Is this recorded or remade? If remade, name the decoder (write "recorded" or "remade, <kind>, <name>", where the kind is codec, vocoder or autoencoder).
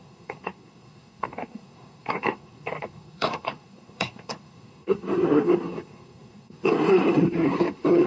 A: remade, codec, SNAC